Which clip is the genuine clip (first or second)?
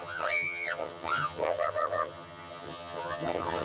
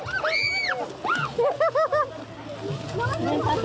second